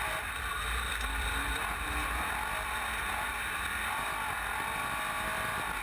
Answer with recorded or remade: recorded